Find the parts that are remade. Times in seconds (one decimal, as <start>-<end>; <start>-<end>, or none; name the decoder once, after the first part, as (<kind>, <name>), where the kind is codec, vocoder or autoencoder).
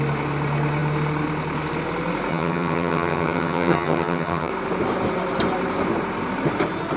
2.3-4.5 (vocoder, HiFi-GAN)